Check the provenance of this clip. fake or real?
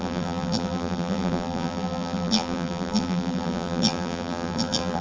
fake